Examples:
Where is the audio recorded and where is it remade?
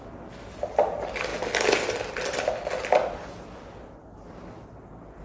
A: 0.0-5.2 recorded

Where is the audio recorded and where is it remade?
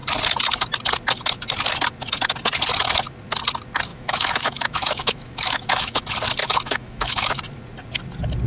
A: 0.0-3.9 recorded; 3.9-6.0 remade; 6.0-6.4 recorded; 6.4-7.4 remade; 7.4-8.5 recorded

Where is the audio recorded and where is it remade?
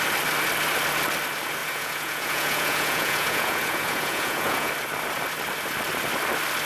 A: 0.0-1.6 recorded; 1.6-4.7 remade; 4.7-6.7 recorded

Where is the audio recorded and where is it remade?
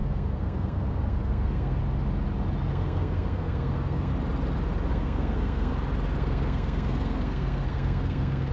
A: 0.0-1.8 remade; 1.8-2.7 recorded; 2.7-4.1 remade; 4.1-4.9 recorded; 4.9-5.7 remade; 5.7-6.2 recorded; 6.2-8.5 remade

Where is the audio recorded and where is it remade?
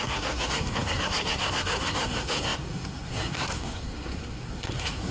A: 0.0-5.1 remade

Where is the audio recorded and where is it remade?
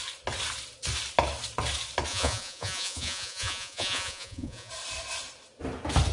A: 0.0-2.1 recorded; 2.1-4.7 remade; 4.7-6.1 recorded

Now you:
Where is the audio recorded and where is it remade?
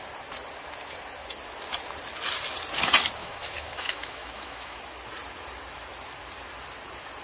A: 0.0-3.2 recorded; 3.2-4.8 remade; 4.8-7.2 recorded